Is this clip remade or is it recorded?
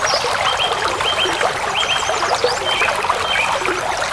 recorded